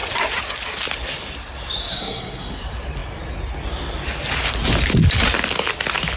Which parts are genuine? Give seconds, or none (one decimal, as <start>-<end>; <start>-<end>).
0.0-1.9; 2.6-6.2